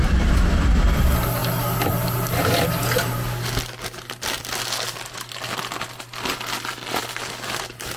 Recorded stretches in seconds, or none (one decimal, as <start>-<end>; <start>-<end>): 0.0-8.0